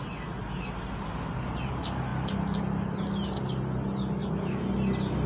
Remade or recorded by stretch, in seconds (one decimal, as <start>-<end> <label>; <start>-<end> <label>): 0.0-5.3 recorded